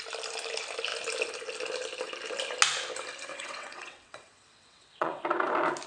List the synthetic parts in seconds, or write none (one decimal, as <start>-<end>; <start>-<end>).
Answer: 3.3-5.2